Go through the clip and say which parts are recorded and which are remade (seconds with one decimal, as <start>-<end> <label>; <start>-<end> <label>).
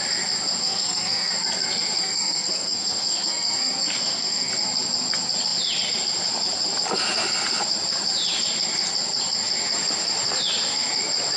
0.0-0.6 recorded; 0.6-1.3 remade; 1.3-2.0 recorded; 2.0-4.5 remade; 4.5-11.4 recorded